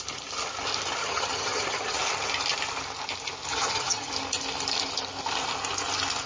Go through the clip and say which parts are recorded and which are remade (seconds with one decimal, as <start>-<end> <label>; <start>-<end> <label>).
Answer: 0.0-1.0 recorded; 1.0-2.0 remade; 2.0-3.5 recorded; 3.5-4.1 remade; 4.1-6.3 recorded